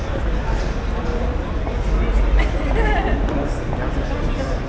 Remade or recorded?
recorded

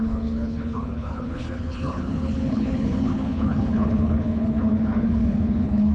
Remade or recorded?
remade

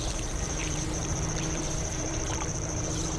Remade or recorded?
remade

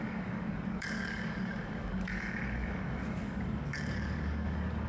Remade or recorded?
remade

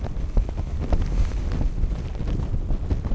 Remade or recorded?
recorded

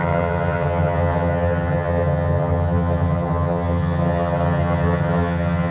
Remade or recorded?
remade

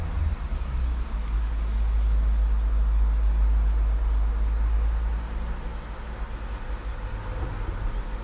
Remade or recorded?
recorded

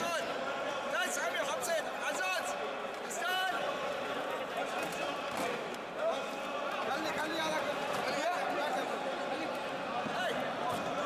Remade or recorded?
recorded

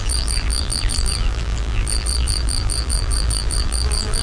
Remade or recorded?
remade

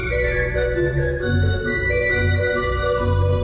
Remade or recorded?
recorded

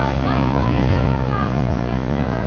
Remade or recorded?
remade